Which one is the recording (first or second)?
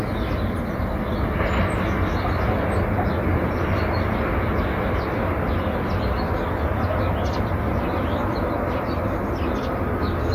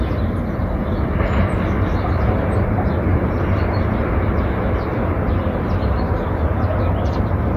first